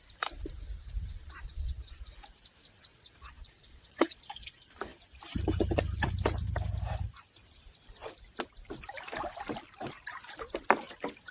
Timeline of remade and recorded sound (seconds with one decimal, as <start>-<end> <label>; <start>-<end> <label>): 0.0-1.2 recorded; 1.2-2.0 remade; 2.0-2.9 recorded; 2.9-4.5 remade; 4.5-11.3 recorded